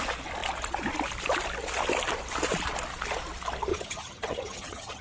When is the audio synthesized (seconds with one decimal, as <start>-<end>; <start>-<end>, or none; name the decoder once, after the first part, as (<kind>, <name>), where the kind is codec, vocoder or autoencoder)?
3.7-5.0 (vocoder, HiFi-GAN)